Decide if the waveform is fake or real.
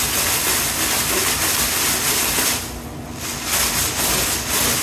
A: real